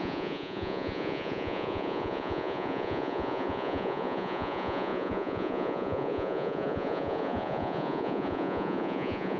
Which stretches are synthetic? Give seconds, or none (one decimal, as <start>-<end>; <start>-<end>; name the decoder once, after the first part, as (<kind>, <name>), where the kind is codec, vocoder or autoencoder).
0.0-9.4 (vocoder, Vocos)